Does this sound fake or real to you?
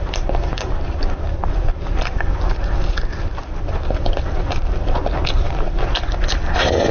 real